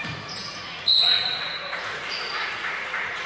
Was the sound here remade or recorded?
remade